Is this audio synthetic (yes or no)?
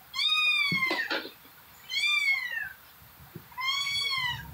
yes